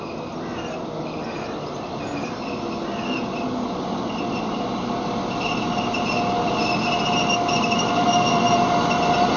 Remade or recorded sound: recorded